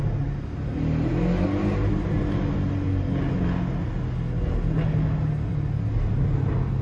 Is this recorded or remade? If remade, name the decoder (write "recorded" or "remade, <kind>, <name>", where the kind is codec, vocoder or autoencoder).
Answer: recorded